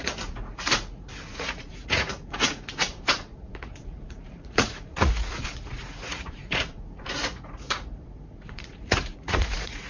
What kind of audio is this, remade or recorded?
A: remade